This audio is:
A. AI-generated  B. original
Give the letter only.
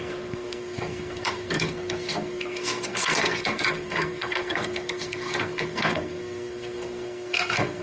A